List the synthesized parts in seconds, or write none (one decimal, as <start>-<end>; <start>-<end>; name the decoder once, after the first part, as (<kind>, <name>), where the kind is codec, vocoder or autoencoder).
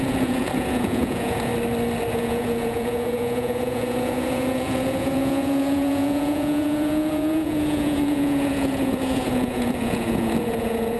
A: 0.0-1.5 (vocoder, Vocos); 2.1-11.0